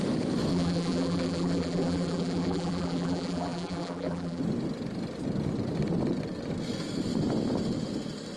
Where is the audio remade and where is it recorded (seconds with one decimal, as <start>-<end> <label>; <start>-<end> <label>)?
0.0-0.5 recorded; 0.5-4.4 remade; 4.4-8.4 recorded